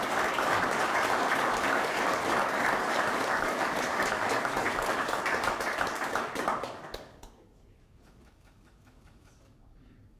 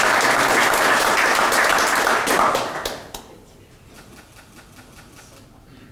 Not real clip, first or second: first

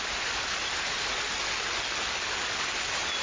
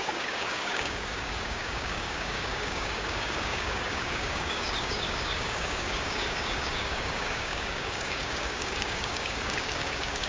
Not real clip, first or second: second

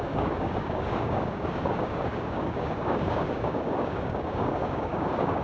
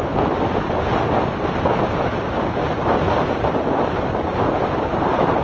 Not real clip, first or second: first